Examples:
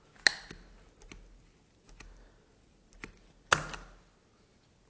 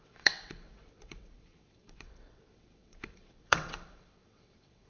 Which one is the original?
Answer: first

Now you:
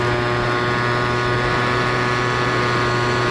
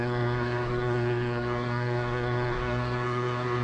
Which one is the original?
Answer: first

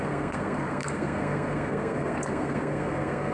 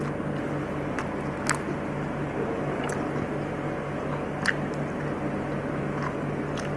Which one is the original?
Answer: second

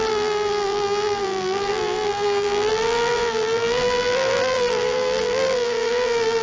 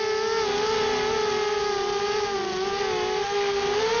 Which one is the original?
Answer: second